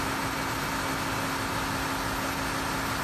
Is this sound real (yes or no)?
yes